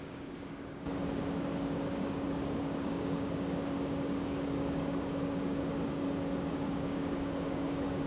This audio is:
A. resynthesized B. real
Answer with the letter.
A